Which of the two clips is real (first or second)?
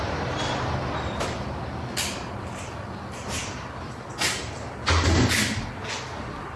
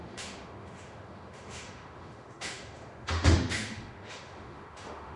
first